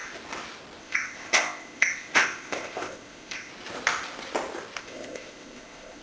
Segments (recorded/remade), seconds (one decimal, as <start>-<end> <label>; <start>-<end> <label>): 0.0-0.8 recorded; 0.8-3.5 remade; 3.5-4.8 recorded; 4.8-6.0 remade